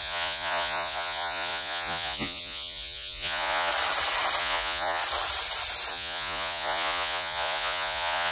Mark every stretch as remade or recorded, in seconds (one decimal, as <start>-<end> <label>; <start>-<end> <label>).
0.0-3.7 remade; 3.7-4.4 recorded; 4.4-5.0 remade; 5.0-5.9 recorded; 5.9-8.3 remade